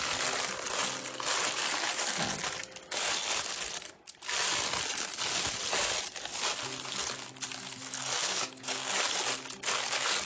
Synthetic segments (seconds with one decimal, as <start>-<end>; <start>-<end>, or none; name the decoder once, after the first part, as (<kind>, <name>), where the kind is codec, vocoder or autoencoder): 8.2-8.9 (codec, DAC)